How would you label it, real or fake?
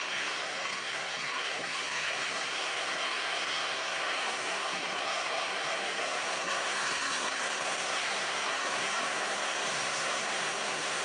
fake